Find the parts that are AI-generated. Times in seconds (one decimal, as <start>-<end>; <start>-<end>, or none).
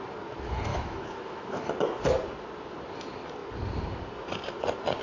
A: 0.7-1.7